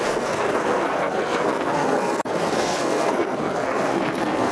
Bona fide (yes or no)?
no